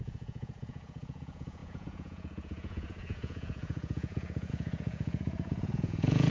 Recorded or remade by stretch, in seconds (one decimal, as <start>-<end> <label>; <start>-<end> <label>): 0.0-6.3 remade